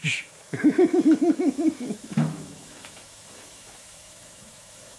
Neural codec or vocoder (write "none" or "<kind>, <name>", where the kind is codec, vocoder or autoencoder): autoencoder, DAC-VAE